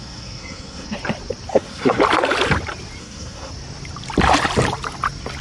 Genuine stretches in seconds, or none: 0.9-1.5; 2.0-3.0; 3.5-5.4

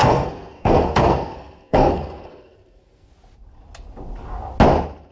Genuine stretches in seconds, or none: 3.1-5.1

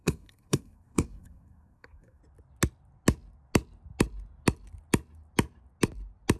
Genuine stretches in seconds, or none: 2.2-6.4